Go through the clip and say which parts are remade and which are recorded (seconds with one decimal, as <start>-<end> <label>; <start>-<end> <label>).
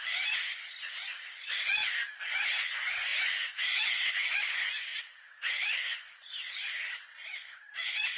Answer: 0.0-8.2 recorded